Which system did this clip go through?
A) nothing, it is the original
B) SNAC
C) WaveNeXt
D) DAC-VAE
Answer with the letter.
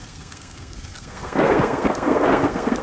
B